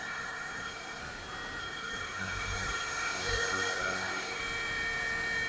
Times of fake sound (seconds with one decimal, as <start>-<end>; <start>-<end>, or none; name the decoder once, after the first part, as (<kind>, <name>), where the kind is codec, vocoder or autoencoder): 0.0-1.0 (codec, SNAC); 1.6-4.4